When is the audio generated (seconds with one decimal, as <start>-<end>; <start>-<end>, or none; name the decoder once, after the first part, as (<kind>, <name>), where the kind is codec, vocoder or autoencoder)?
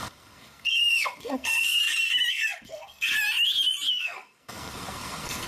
0.0-1.8 (codec, SNAC); 2.3-3.1; 3.9-5.5